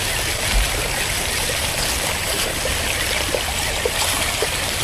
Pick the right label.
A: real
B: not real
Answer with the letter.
A